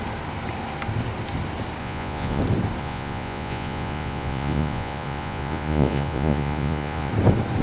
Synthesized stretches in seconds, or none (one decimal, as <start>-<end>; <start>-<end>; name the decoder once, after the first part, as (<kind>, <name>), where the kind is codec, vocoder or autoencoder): 1.8-2.4 (vocoder, Vocos); 2.8-7.1